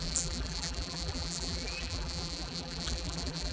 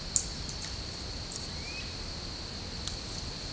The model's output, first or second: first